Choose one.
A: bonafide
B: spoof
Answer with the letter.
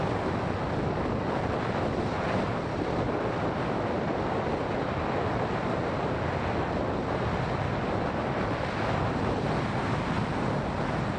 A